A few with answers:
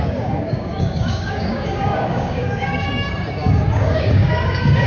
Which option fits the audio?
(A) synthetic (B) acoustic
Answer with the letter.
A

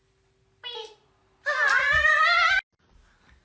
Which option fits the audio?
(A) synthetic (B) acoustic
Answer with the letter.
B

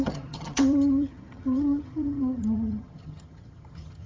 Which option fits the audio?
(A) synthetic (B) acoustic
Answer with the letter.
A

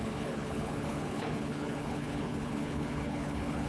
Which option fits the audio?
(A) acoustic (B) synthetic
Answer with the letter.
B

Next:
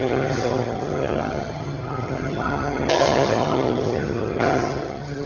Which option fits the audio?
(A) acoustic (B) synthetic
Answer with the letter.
B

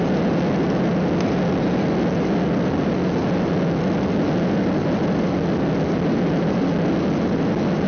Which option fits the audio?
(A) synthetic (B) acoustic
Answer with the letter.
B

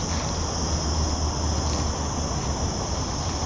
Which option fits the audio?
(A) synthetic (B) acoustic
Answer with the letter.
B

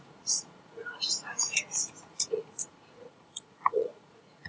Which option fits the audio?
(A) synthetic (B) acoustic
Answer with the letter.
A